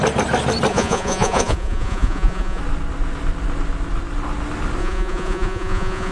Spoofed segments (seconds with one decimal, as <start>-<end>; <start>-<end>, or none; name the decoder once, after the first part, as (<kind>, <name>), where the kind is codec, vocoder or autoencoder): 0.7-2.6 (vocoder, Vocos); 4.8-6.1